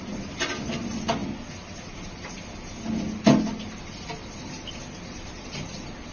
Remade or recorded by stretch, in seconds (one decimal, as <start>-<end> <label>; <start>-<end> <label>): 0.0-6.1 recorded